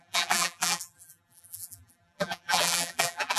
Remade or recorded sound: remade